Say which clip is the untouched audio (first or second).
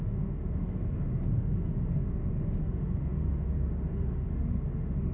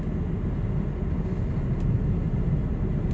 second